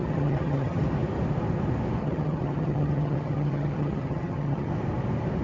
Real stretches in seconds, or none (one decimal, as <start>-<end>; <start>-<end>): 0.8-2.0; 4.7-5.4